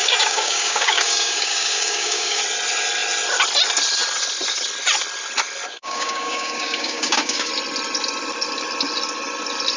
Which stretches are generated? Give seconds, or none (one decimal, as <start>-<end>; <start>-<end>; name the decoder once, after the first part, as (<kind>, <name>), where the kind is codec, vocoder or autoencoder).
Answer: 0.0-2.4 (codec, DAC); 5.7-7.5